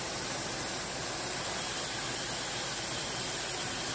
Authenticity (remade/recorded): recorded